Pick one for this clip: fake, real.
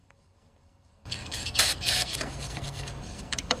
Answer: fake